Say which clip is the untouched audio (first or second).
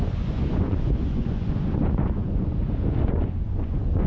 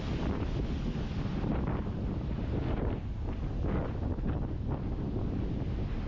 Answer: second